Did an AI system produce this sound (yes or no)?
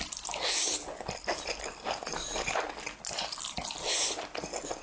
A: no